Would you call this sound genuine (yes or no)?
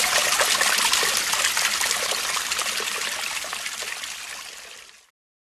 yes